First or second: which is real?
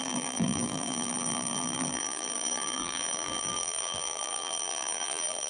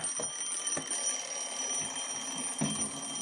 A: second